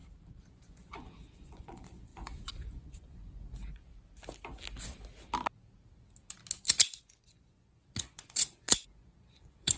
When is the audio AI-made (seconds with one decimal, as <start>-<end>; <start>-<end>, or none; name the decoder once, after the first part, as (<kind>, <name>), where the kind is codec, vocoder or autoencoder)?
0.5-3.9 (vocoder, Vocos); 7.0-9.8